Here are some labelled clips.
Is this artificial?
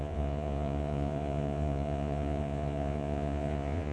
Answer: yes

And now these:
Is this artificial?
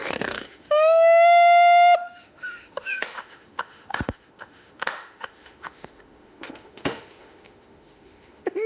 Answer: yes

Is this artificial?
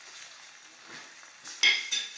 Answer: no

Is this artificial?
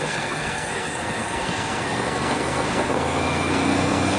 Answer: yes